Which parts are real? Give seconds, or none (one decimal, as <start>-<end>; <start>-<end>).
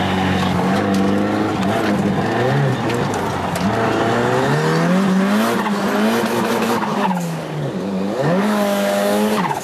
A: 1.5-6.5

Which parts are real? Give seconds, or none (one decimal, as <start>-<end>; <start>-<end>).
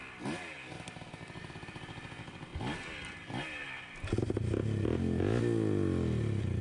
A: 0.0-6.6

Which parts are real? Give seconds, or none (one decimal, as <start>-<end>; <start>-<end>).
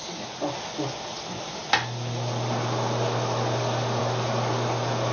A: 0.0-5.1